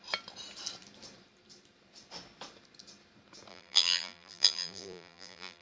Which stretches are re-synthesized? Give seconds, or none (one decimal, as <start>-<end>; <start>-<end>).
3.5-5.6